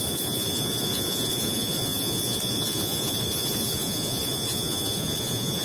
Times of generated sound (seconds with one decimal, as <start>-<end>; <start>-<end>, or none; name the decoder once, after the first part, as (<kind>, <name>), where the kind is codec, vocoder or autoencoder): 0.0-5.6 (vocoder, Vocos)